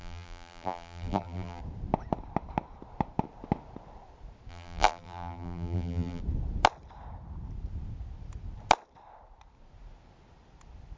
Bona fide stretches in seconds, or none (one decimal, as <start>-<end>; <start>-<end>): 1.6-4.5; 6.2-11.0